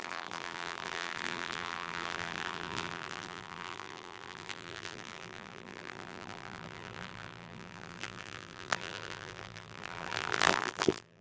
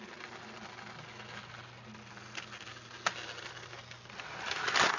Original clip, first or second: second